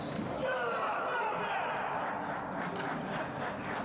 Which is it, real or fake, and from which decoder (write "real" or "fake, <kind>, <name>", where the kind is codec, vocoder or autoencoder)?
real